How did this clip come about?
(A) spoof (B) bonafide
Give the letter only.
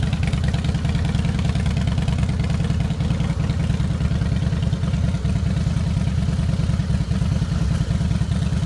B